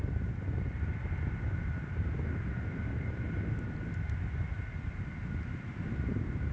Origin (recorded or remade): recorded